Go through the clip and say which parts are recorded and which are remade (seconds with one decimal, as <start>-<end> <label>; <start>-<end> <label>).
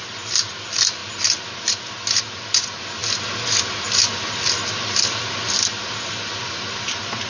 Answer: 0.0-7.3 recorded